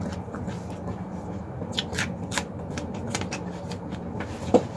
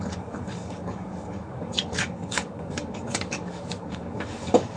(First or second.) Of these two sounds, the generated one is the second